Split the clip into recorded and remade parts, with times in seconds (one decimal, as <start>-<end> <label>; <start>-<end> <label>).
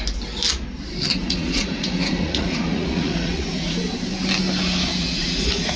0.0-1.1 recorded; 1.1-3.8 remade; 3.8-5.0 recorded; 5.0-5.8 remade